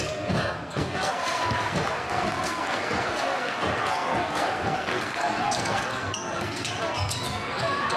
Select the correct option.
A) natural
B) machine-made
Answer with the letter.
B